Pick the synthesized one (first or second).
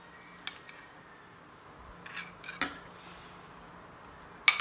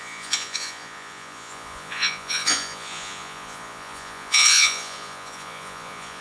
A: second